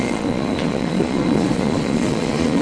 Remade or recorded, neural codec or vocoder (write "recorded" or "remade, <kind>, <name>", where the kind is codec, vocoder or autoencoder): remade, vocoder, Vocos